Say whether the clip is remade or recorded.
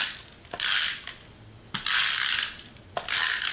recorded